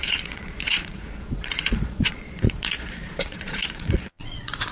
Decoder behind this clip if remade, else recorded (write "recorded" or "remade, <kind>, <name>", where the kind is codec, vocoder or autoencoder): remade, vocoder, Vocos